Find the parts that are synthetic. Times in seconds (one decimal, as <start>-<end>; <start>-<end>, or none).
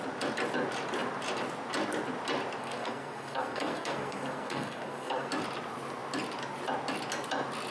2.6-5.3